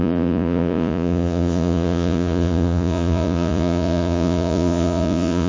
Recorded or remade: remade